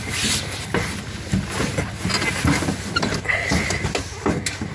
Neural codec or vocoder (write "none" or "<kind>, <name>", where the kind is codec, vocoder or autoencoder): none